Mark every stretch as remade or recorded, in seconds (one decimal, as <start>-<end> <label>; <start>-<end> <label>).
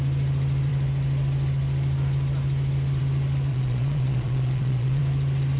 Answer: 0.0-3.5 recorded; 3.5-5.0 remade; 5.0-5.6 recorded